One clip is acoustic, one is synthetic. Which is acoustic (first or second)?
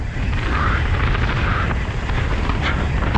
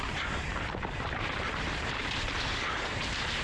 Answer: first